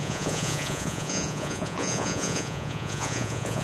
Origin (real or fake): fake